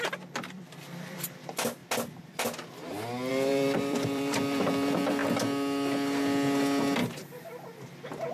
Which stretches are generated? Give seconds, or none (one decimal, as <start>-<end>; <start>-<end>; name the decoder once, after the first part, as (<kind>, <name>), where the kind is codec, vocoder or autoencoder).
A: 0.0-1.8 (vocoder, BigVGAN v2); 3.3-5.2

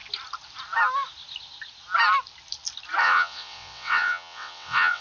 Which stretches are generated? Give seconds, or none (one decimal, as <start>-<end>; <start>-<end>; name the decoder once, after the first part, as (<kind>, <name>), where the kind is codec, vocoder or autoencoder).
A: 3.0-5.0 (vocoder, WaveNeXt)

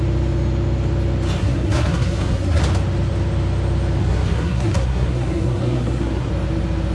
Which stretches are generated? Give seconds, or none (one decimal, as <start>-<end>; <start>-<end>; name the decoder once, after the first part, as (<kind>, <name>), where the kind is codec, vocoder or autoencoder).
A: 1.4-2.6 (codec, SNAC); 4.0-6.3

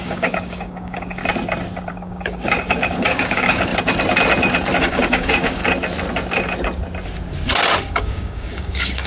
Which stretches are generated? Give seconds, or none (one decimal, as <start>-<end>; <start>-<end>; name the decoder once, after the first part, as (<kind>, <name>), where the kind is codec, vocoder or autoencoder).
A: 0.0-1.2 (codec, DAC); 1.9-3.7; 4.8-5.6; 7.9-9.1

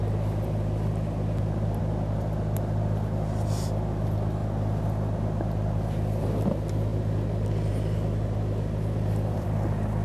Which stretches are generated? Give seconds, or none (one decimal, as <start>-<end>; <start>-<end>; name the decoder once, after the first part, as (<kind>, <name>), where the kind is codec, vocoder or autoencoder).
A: 0.0-4.4 (vocoder, BigVGAN v2); 6.2-10.0

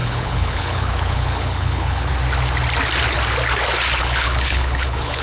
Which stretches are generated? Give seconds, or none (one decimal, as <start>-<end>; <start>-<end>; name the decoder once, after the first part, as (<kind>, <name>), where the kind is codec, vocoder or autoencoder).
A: 0.0-2.1 (codec, HILCodec); 4.0-5.2